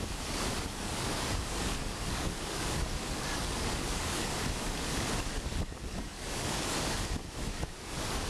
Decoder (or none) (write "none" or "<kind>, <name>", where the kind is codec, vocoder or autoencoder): codec, DAC